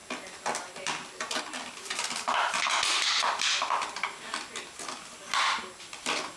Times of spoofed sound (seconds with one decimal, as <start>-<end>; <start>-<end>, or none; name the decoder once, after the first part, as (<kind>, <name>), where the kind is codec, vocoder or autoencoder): none